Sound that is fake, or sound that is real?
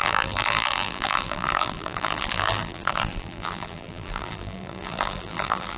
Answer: fake